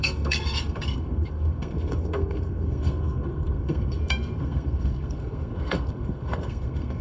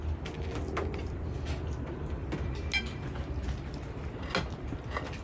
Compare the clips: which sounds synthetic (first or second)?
first